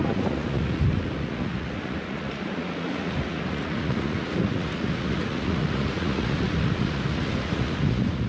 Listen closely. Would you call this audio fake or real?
fake